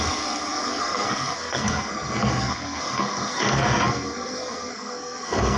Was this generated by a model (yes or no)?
yes